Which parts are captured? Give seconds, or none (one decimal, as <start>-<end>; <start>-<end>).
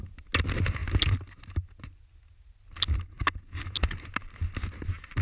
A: 0.0-5.2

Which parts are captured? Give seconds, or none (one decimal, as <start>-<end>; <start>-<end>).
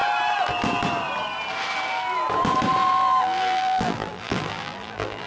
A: 0.0-3.2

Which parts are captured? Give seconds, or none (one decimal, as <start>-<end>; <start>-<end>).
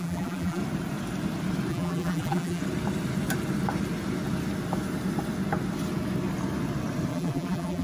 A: 0.6-1.7; 2.6-7.1